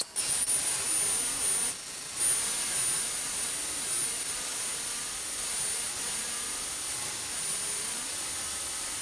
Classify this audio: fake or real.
real